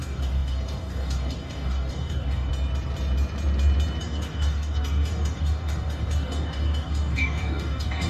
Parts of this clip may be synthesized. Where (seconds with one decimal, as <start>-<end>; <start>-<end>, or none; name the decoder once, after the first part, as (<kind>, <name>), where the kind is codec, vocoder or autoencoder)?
0.0-2.5 (codec, DAC); 4.0-8.1